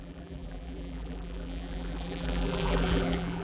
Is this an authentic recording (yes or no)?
no